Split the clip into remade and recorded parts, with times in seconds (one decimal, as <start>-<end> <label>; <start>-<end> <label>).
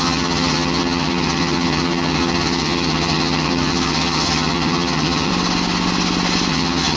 0.0-5.3 remade; 5.3-6.5 recorded; 6.5-7.0 remade